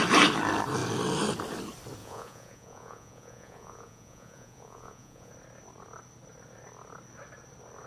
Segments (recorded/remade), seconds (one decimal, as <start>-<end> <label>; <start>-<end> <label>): 0.0-2.0 recorded; 2.0-5.3 remade; 5.3-7.9 recorded